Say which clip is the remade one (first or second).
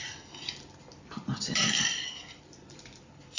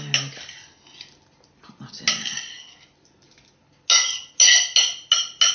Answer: first